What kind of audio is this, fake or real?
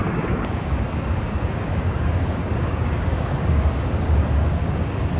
fake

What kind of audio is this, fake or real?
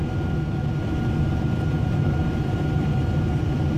real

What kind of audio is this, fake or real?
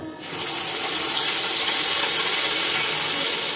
real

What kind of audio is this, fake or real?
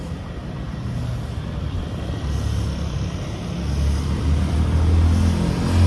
real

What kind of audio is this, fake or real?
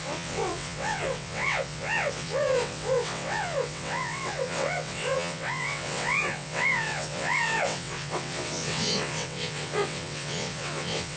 fake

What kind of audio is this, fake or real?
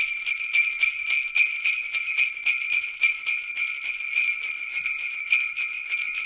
real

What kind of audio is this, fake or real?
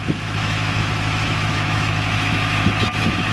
fake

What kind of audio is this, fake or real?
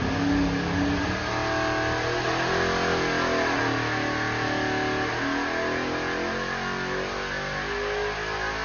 real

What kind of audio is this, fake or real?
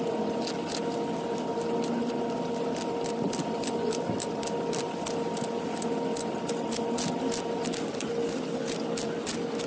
real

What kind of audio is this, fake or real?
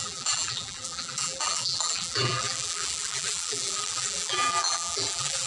fake